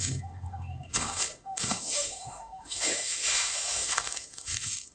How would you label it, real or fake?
fake